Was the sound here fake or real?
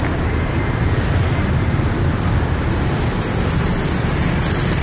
real